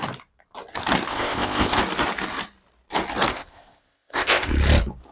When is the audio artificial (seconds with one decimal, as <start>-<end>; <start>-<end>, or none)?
1.1-1.8; 3.3-4.5

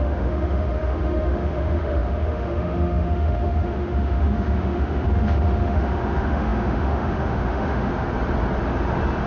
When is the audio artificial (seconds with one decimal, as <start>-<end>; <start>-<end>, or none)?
0.0-7.9

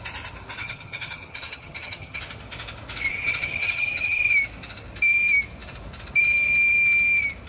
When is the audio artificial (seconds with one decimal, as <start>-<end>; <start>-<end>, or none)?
0.6-2.2; 3.1-4.3

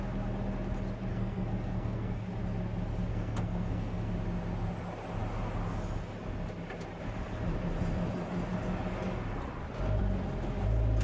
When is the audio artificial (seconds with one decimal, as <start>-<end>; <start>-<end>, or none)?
1.1-2.2; 3.1-4.1

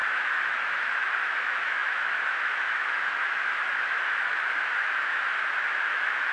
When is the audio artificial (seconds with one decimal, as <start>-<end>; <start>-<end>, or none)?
0.0-6.3

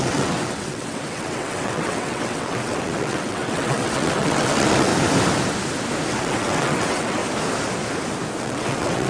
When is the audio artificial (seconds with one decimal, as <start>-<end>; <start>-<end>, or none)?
0.0-4.9; 6.1-7.2; 8.4-9.1

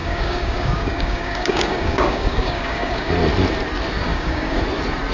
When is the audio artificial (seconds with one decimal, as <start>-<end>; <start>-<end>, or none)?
0.0-3.1; 4.0-4.6